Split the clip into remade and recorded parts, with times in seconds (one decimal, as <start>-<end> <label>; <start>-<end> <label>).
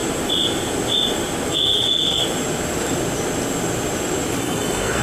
0.0-1.5 recorded; 1.5-2.2 remade; 2.2-4.4 recorded; 4.4-5.0 remade